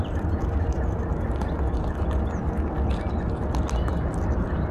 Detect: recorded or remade recorded